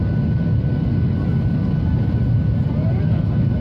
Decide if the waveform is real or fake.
real